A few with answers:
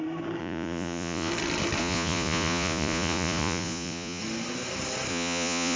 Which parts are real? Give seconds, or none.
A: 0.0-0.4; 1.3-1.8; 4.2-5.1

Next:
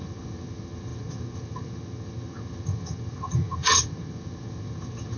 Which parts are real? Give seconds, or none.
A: none

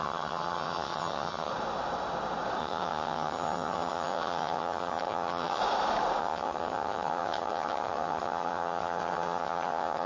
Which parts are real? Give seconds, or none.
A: 1.5-2.6; 5.6-6.2

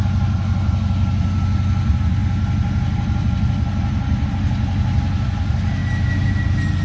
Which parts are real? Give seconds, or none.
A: 0.0-6.8

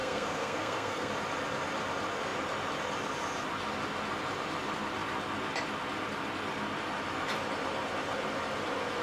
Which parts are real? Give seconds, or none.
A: 1.1-9.0

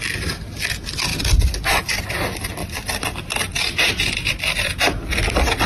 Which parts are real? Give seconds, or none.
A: 0.0-2.6; 4.7-5.7

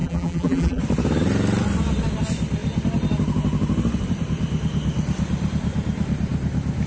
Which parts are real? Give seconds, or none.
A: 0.8-6.9